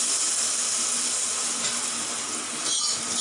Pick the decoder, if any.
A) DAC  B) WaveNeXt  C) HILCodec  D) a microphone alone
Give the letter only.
D